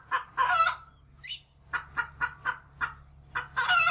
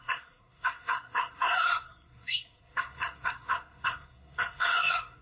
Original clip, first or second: first